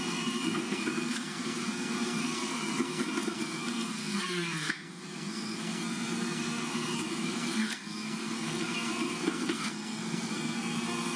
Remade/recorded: remade